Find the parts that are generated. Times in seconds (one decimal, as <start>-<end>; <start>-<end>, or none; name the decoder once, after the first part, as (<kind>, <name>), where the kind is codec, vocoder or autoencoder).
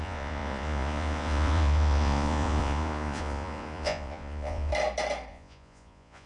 0.0-4.7 (vocoder, Vocos); 5.3-6.3